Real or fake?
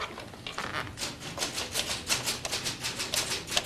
real